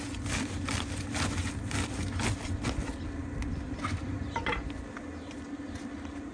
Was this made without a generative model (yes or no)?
yes